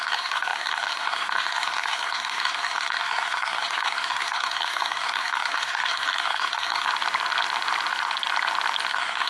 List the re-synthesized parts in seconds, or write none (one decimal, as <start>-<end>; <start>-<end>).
0.0-6.9; 8.9-9.3